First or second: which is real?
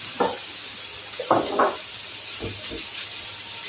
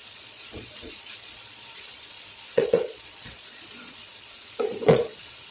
first